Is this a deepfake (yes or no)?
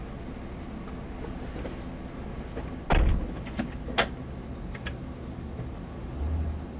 no